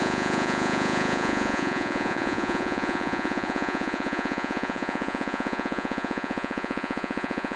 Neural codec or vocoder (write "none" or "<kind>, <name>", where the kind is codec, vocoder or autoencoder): vocoder, Vocos